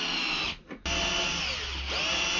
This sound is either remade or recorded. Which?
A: recorded